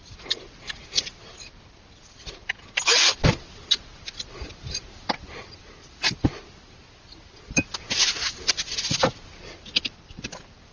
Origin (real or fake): real